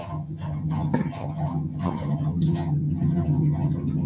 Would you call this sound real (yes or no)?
no